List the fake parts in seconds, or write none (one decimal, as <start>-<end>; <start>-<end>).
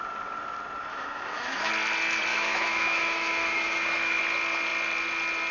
0.9-1.7; 2.3-4.2